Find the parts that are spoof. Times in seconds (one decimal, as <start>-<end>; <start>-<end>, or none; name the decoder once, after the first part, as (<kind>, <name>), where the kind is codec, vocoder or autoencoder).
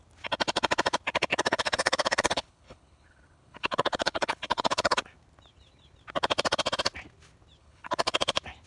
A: 1.3-5.0 (codec, HILCodec); 7.6-8.2